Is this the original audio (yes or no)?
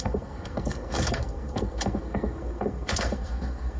no